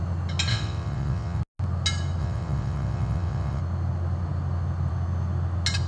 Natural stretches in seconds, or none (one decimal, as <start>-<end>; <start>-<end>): 0.0-0.5; 1.4-2.2; 3.6-5.9